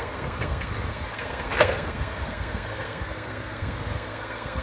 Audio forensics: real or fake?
fake